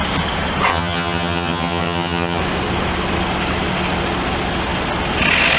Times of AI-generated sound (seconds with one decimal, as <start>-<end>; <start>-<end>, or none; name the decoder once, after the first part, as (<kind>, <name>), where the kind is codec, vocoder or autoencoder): 0.7-2.4 (vocoder, HiFi-GAN)